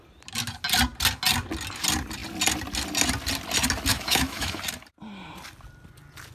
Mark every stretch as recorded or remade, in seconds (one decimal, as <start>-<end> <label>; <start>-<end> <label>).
0.0-3.9 recorded; 3.9-4.6 remade; 4.6-6.3 recorded